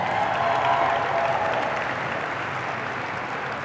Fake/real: real